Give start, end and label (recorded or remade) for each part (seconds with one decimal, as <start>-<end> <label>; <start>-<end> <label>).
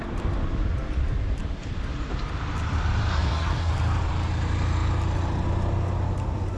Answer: 0.0-3.1 recorded; 3.1-3.7 remade; 3.7-6.6 recorded